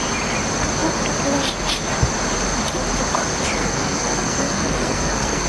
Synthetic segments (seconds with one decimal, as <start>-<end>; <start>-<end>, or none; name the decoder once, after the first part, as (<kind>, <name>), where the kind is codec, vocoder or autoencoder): 3.6-5.5 (codec, SNAC)